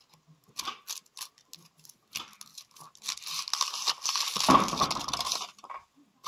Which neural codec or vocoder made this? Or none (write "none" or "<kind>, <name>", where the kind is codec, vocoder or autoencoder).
none